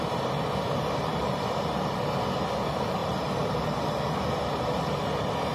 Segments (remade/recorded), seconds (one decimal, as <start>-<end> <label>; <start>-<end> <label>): 0.0-1.1 recorded; 1.1-1.8 remade; 1.8-3.0 recorded; 3.0-3.8 remade; 3.8-5.5 recorded